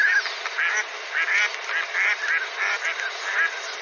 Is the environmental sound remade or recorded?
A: recorded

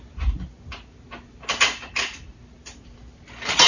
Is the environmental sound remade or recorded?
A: recorded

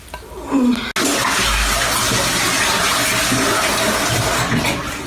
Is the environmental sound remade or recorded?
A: recorded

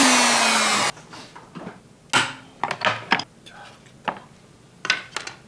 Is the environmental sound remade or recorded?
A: recorded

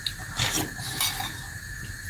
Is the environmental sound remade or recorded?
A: recorded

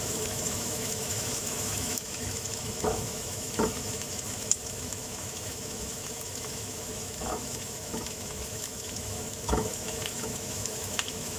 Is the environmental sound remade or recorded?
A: remade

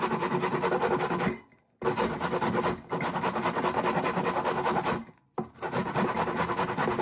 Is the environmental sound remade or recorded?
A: recorded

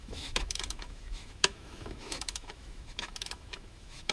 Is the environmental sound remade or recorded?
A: remade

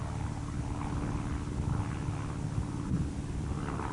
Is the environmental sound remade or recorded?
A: recorded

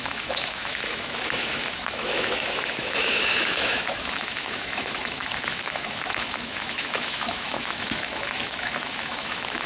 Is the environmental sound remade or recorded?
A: remade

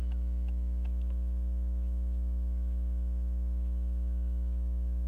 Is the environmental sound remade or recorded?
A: remade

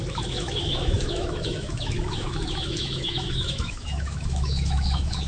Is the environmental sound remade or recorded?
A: remade